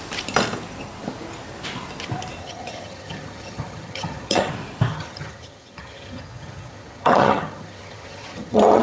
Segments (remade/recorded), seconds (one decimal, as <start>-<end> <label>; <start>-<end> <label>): 0.0-2.4 recorded; 2.4-4.5 remade; 4.5-4.9 recorded; 4.9-8.8 remade